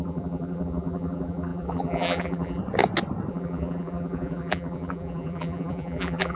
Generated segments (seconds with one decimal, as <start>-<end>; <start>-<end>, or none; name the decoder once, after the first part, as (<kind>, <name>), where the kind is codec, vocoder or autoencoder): 0.0-2.6 (vocoder, BigVGAN v2); 3.3-6.4